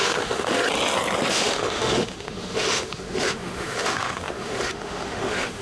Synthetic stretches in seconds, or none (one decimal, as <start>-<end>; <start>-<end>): 0.0-0.6; 1.3-5.6